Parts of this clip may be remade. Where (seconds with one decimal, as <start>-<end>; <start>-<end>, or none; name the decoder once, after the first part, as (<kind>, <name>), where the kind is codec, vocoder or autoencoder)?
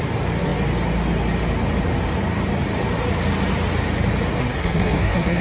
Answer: 4.4-5.4 (codec, SNAC)